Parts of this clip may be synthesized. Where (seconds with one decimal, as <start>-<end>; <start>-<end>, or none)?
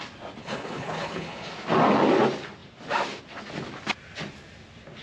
0.4-1.5